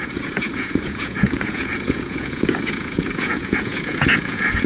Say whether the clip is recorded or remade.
remade